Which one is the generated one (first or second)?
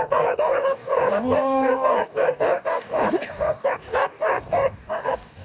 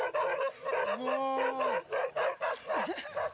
first